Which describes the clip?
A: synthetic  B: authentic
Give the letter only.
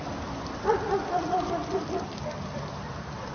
B